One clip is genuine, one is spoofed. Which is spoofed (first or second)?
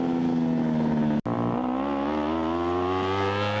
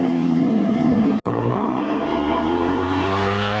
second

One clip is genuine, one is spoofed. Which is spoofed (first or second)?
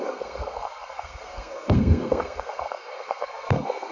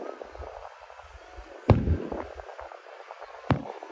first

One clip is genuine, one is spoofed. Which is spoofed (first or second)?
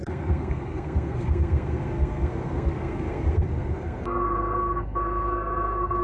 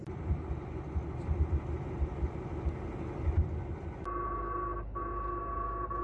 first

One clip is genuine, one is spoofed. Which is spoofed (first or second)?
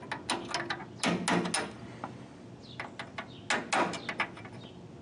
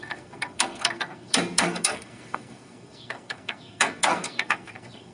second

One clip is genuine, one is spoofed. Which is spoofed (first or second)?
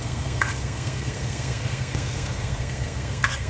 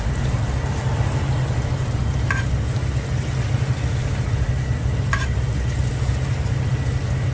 first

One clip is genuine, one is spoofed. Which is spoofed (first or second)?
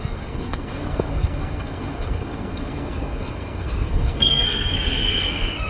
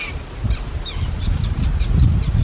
first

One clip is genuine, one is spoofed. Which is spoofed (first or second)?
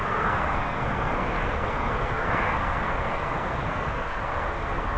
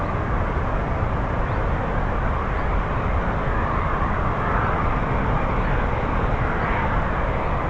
first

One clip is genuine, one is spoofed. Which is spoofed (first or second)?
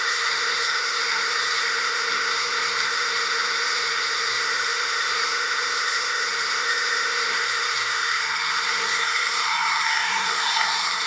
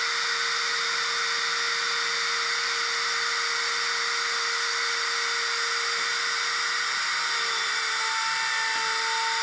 first